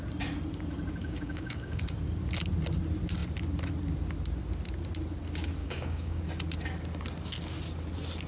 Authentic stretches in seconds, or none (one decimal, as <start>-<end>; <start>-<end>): 0.0-1.0; 1.8-5.6; 6.2-8.3